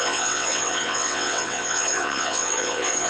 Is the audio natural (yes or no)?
no